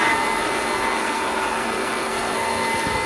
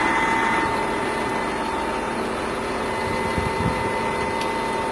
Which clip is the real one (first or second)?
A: second